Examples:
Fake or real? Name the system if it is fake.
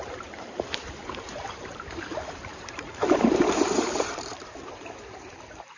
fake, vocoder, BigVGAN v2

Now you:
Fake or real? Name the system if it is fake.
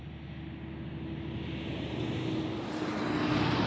real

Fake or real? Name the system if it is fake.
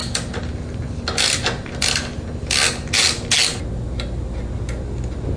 real